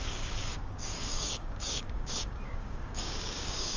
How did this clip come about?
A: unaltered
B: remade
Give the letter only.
B